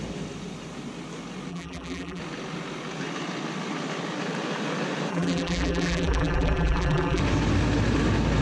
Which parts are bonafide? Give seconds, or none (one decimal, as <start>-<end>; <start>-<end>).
0.0-1.5; 2.2-5.1; 7.2-8.4